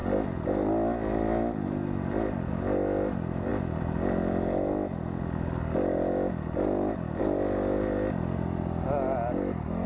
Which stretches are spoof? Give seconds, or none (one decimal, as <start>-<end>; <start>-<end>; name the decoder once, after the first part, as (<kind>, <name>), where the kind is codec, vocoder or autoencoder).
none